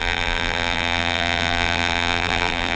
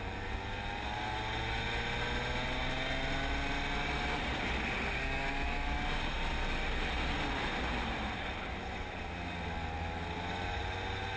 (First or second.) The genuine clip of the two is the second